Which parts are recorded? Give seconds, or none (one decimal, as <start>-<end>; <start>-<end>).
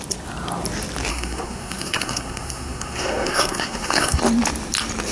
0.0-1.1; 4.2-5.1